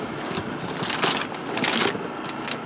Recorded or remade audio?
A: recorded